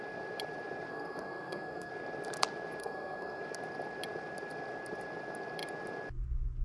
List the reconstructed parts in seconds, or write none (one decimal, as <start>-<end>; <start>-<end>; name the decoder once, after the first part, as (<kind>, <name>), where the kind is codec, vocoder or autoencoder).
0.9-1.9 (codec, SNAC); 2.8-3.4